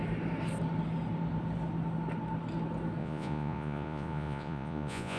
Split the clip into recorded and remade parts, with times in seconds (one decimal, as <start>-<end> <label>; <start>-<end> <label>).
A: 0.0-3.0 recorded; 3.0-5.2 remade

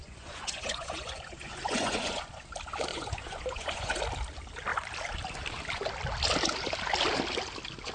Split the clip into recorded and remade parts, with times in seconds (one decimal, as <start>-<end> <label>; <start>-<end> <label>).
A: 0.0-2.3 remade; 2.3-2.9 recorded; 2.9-4.0 remade; 4.0-7.9 recorded

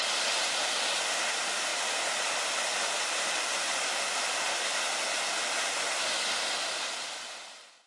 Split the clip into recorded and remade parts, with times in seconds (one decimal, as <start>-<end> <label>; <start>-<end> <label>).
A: 0.0-7.9 recorded

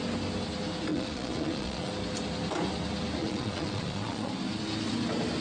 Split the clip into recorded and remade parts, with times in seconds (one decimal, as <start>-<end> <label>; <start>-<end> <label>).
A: 0.0-0.9 recorded; 0.9-1.9 remade; 1.9-3.2 recorded; 3.2-4.3 remade; 4.3-5.4 recorded